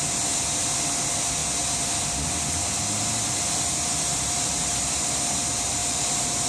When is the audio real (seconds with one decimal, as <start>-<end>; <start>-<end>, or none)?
0.0-4.1; 4.7-5.8